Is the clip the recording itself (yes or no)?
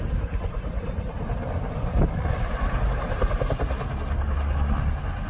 yes